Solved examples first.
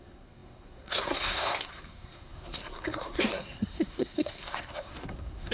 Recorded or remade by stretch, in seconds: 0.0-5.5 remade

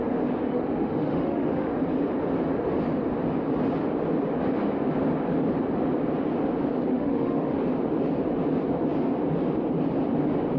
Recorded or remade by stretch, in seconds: 0.0-0.5 recorded; 0.5-1.7 remade; 1.7-6.9 recorded; 6.9-7.6 remade; 7.6-10.6 recorded